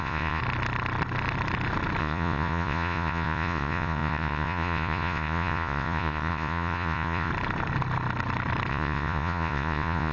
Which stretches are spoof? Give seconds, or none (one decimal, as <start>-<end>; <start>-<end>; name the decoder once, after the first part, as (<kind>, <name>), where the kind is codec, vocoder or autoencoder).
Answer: 0.0-0.4 (vocoder, Vocos); 2.0-7.3; 8.7-10.1